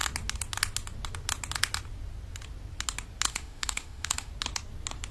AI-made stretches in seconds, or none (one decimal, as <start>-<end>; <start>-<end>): 3.3-4.3